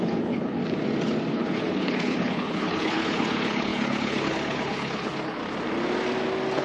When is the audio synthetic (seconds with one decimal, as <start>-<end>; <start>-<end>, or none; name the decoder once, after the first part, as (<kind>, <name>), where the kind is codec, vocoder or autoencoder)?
0.0-0.6 (codec, HILCodec); 1.3-5.4